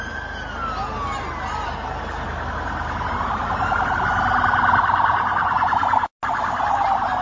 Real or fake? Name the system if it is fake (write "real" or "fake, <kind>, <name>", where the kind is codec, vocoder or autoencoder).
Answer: real